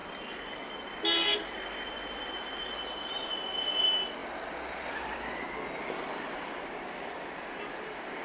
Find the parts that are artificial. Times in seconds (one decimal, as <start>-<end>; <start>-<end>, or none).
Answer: none

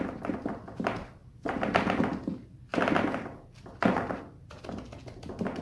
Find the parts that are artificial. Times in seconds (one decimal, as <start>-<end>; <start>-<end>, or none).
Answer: none

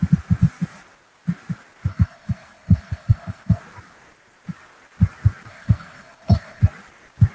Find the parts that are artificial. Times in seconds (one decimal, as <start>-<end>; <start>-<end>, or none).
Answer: 1.9-3.6; 5.5-6.6

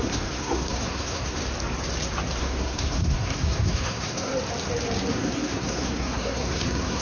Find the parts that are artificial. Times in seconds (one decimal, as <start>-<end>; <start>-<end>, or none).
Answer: 0.0-1.4; 2.4-4.3; 5.1-7.0

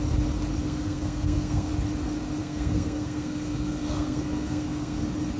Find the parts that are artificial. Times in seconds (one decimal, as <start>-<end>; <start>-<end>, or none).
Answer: 0.6-1.7; 2.4-5.0

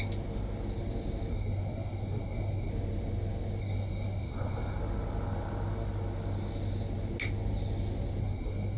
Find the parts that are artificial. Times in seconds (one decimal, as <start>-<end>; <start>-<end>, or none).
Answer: 1.3-2.7; 3.6-4.8; 8.2-8.8